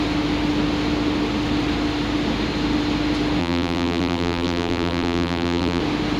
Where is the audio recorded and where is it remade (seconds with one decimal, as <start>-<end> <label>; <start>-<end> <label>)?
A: 0.0-3.4 recorded; 3.4-5.8 remade; 5.8-6.2 recorded